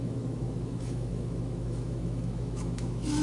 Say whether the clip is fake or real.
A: fake